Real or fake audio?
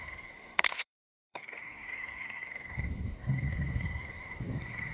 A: fake